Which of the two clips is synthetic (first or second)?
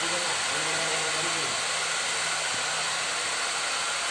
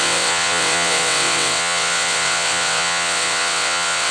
second